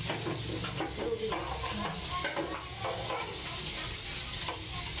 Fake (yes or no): no